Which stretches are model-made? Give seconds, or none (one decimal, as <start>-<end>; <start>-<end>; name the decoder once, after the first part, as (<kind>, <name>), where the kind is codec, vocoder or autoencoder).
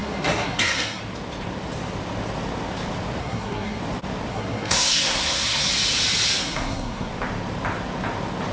0.0-1.0 (codec, SNAC); 3.2-3.8; 4.3-5.7; 6.4-7.1